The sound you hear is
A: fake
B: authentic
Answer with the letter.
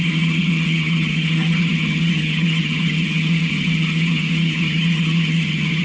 A